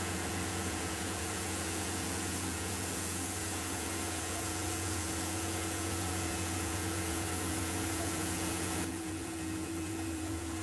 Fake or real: fake